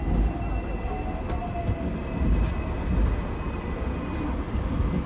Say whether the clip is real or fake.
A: real